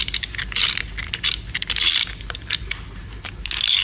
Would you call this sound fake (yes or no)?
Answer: no